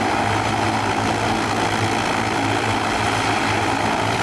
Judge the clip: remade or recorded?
recorded